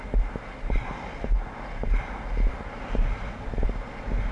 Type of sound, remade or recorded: recorded